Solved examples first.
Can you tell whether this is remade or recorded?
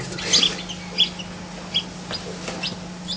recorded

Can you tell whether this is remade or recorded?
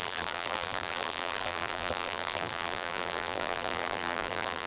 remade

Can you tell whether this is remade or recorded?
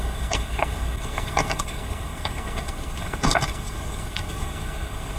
remade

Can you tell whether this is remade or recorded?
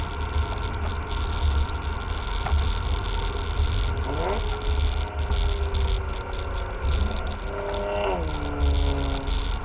recorded